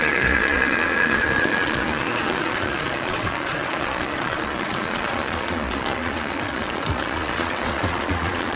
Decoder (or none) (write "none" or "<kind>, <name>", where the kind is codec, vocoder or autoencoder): vocoder, Vocos